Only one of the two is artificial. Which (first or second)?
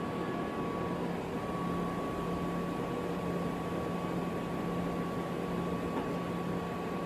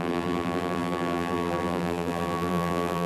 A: second